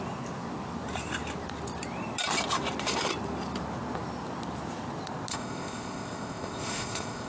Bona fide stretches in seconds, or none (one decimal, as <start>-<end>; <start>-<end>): 0.0-5.3